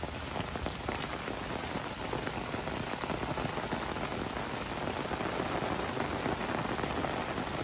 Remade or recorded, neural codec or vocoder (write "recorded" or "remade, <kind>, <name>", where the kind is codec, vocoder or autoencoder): recorded